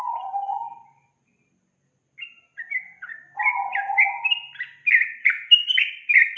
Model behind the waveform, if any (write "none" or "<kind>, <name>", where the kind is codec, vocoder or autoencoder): none